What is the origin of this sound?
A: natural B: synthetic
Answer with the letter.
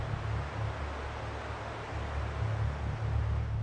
A